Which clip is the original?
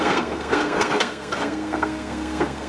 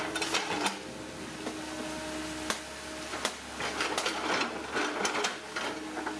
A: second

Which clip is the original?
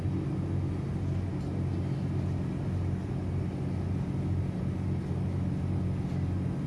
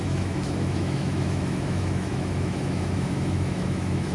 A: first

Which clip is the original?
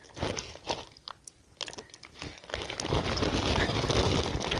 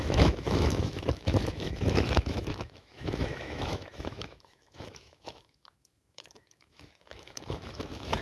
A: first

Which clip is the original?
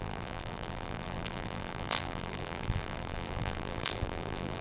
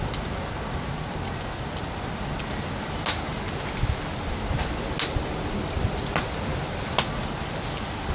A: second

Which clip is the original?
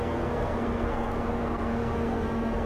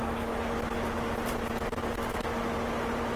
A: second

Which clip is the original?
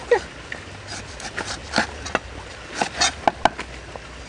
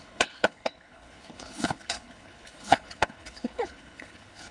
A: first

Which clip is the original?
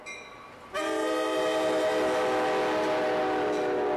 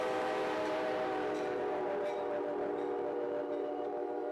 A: first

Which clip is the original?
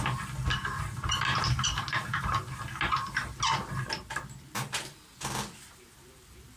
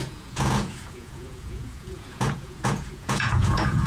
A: first